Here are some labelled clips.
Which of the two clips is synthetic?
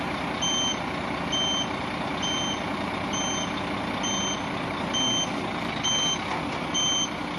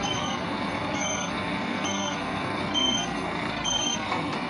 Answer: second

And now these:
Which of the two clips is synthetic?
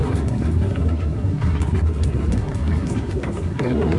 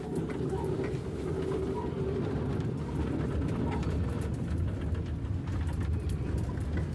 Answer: first